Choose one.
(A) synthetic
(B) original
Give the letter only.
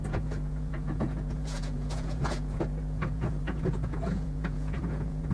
A